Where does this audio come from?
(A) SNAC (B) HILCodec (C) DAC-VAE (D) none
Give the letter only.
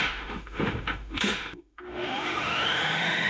C